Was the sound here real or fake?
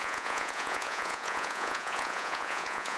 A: fake